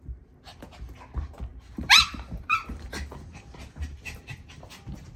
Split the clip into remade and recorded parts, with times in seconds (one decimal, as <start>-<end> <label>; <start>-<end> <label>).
0.0-1.5 recorded; 1.5-4.6 remade; 4.6-5.2 recorded